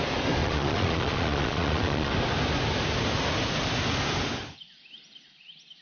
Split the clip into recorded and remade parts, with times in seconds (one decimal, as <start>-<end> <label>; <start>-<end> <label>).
0.0-0.4 recorded; 0.4-2.1 remade; 2.1-5.8 recorded